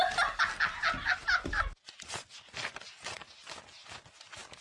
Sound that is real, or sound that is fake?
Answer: real